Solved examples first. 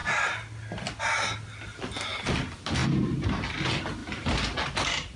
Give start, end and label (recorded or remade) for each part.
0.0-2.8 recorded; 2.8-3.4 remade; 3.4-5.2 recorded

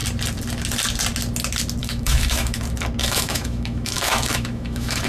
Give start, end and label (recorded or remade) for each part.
0.0-1.8 recorded; 1.8-2.6 remade; 2.6-3.0 recorded; 3.0-5.1 remade

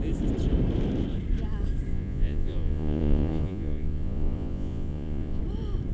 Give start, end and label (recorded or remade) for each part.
0.0-1.9 recorded; 1.9-5.4 remade; 5.4-5.9 recorded

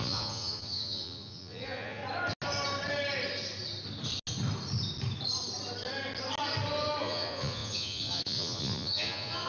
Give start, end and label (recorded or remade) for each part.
0.0-2.0 remade; 2.0-7.0 recorded; 7.0-9.5 remade

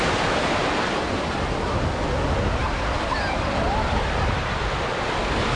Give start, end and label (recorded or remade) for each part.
0.0-5.6 recorded

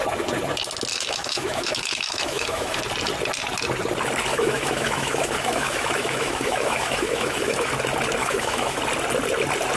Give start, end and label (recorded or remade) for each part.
0.0-0.9 recorded; 0.9-2.8 remade; 2.8-4.3 recorded; 4.3-7.7 remade; 7.7-8.2 recorded; 8.2-8.8 remade; 8.8-9.8 recorded

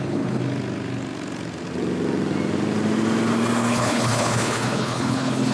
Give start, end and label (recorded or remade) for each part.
0.0-0.4 remade; 0.4-3.7 recorded; 3.7-5.5 remade

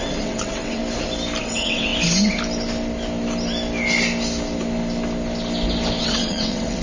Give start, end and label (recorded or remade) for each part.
0.0-0.8 remade; 0.8-1.4 recorded; 1.4-1.9 remade; 1.9-6.0 recorded; 6.0-6.8 remade